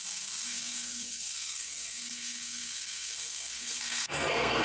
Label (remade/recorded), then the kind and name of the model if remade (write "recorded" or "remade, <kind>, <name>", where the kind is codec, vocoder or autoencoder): remade, codec, SNAC